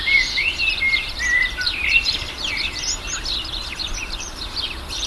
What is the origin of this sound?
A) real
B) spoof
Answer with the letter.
B